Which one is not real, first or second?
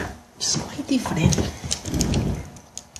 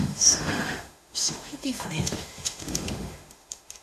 second